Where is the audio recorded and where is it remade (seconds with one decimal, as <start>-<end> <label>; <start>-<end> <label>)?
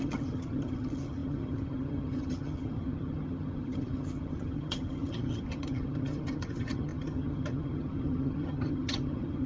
0.0-9.5 remade